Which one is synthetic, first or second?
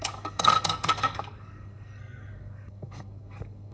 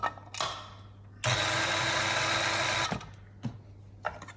first